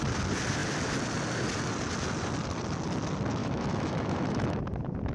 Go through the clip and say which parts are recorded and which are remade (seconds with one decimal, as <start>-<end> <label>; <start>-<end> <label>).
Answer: 0.0-3.4 recorded; 3.4-4.6 remade; 4.6-5.1 recorded